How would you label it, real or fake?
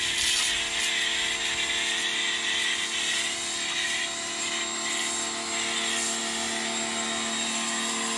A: real